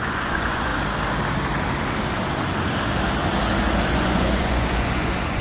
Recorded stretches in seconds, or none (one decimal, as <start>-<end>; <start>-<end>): 0.7-3.9